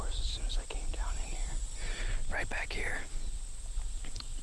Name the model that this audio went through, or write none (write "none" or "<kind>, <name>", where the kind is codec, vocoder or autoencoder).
none